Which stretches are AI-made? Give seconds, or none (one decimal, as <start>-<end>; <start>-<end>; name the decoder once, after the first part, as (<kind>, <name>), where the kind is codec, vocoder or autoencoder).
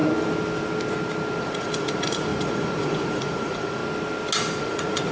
1.4-3.8 (vocoder, Vocos); 4.6-5.1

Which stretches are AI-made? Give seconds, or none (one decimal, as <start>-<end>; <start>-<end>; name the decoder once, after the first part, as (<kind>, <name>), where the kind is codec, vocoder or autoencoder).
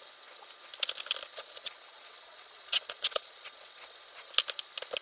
1.3-4.3 (vocoder, Vocos)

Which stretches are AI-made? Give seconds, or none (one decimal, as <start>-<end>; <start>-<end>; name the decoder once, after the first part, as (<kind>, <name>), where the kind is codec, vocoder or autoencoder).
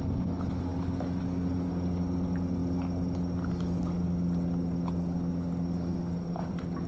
none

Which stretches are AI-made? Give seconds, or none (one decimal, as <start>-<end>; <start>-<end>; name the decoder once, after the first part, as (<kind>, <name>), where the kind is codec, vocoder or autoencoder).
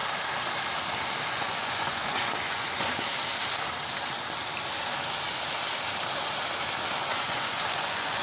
1.3-3.1 (vocoder, Vocos); 7.0-8.2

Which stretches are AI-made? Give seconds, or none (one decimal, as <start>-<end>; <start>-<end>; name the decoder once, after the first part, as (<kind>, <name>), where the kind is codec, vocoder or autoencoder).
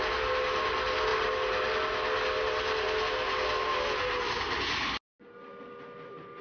none